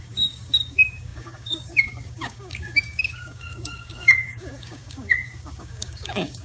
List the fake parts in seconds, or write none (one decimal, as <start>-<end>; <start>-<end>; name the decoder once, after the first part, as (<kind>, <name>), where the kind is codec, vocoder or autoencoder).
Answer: 0.0-6.4 (codec, DAC)